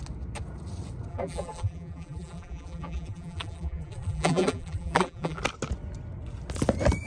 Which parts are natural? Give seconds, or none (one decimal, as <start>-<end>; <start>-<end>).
0.0-1.1; 5.4-7.1